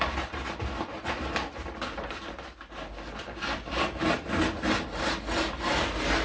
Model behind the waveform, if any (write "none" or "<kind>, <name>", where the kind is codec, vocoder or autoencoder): none